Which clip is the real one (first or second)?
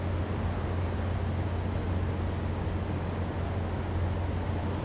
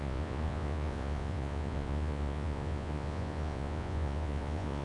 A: first